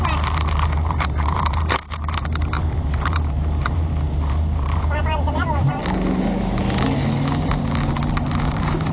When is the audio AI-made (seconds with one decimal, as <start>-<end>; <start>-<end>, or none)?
0.0-5.8; 8.1-8.9